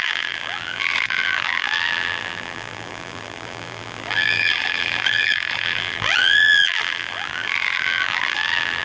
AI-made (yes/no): yes